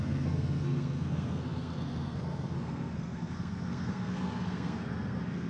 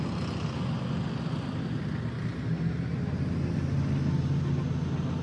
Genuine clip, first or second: second